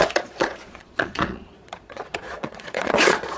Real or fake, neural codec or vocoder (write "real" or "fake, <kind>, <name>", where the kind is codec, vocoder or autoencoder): fake, vocoder, Vocos